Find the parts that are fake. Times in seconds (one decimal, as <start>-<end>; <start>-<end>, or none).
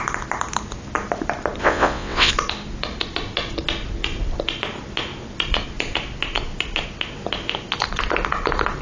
1.6-2.3